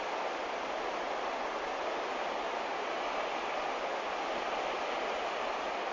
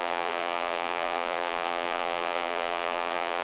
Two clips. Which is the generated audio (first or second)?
second